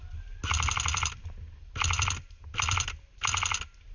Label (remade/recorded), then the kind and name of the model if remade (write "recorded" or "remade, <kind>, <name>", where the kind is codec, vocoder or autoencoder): recorded